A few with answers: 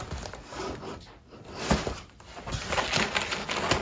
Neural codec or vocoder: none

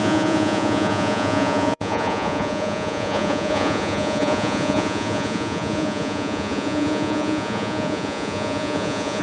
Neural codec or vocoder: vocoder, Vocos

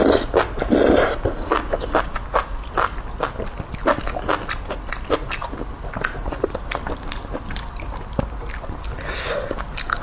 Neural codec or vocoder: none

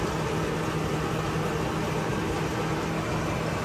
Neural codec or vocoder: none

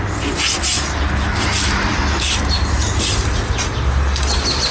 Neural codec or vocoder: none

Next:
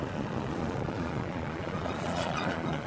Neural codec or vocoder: vocoder, Vocos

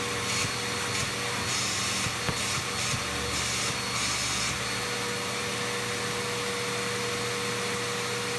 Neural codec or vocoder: none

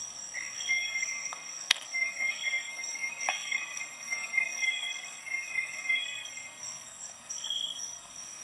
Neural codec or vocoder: codec, SNAC